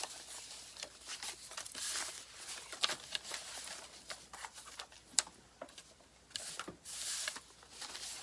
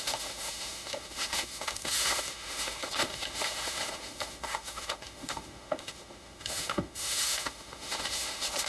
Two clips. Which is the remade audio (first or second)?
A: second